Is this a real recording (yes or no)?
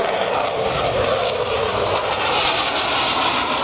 yes